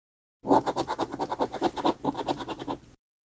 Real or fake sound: real